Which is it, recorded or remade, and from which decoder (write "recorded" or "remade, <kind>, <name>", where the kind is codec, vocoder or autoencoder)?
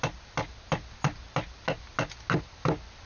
recorded